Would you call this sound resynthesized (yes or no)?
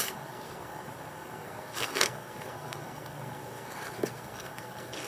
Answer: yes